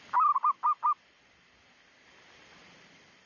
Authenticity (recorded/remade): recorded